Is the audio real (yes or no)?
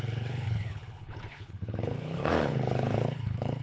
no